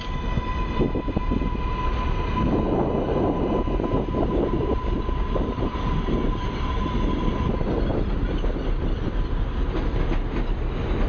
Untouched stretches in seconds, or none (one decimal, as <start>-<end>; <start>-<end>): 0.0-11.1